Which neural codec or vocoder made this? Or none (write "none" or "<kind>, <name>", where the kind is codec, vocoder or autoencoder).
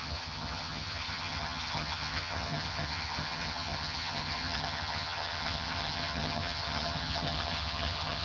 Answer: vocoder, HiFi-GAN